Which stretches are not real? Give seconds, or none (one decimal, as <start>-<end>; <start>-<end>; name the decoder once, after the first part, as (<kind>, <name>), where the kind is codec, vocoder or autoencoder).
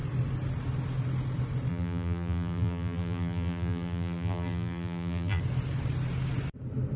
1.7-5.4 (vocoder, BigVGAN v2)